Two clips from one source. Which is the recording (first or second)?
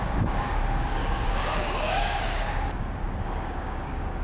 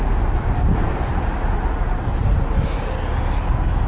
second